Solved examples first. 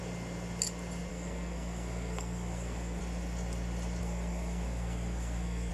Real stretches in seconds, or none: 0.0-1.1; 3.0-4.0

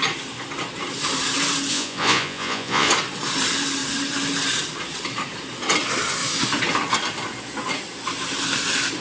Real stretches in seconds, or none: 0.0-1.7; 2.9-9.0

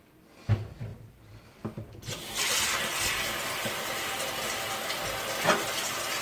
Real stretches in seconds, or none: 0.0-6.2